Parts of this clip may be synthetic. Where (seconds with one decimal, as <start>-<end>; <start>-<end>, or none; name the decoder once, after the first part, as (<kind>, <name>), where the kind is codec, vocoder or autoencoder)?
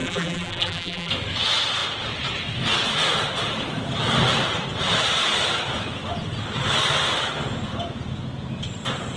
0.0-1.1 (vocoder, BigVGAN v2)